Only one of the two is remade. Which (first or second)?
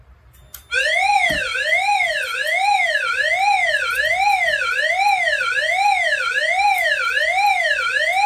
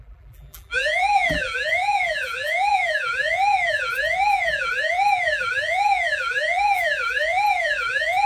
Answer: second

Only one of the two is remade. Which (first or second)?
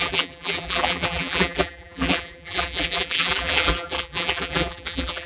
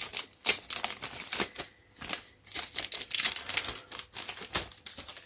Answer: first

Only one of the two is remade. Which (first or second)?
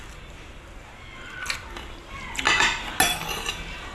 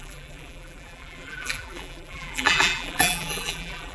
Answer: second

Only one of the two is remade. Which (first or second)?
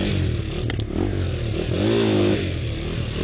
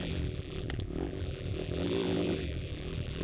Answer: second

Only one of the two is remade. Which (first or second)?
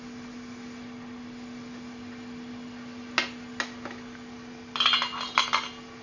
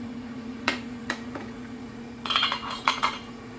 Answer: second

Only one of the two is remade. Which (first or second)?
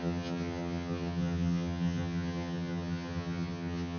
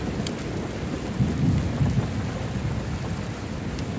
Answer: first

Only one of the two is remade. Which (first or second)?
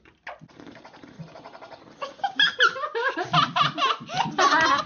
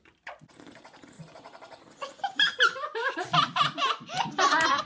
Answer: second